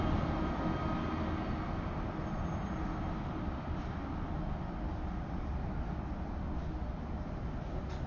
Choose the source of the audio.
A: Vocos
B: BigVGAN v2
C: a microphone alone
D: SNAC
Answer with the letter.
C